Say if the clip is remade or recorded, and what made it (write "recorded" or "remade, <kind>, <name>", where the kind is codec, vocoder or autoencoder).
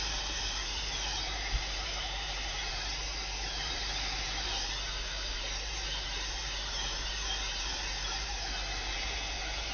remade, vocoder, BigVGAN v2